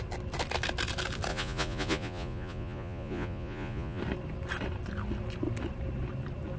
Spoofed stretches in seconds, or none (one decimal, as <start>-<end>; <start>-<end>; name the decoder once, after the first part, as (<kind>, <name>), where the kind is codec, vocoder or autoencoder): 1.3-4.0 (vocoder, Vocos)